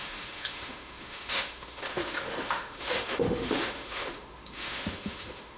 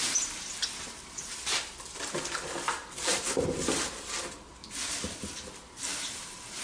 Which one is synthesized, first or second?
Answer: first